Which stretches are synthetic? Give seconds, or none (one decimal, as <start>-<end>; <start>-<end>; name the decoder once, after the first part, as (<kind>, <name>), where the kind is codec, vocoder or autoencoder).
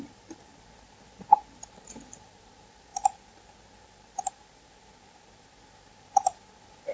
none